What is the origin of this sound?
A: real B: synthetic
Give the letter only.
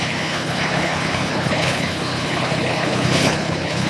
B